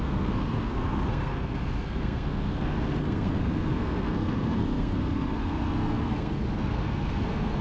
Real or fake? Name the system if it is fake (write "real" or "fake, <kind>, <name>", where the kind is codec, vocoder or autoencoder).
fake, codec, SNAC